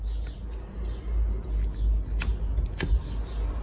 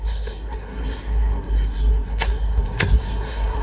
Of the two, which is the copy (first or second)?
second